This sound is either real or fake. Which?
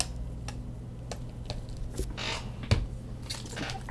real